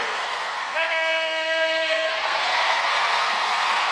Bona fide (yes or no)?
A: no